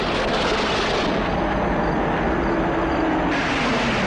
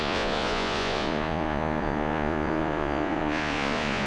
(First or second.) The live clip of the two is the first